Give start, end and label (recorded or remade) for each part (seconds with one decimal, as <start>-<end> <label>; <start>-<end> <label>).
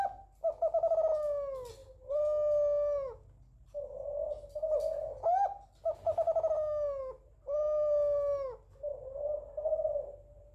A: 0.0-10.5 recorded